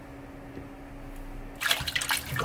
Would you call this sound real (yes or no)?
yes